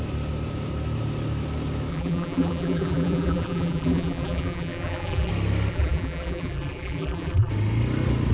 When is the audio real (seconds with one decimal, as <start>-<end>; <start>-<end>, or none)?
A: 0.0-1.9; 5.3-5.7; 7.5-8.3